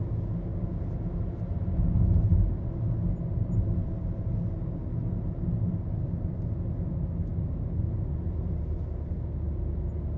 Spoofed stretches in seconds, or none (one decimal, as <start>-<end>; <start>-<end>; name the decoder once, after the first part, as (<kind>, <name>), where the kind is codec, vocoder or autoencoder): none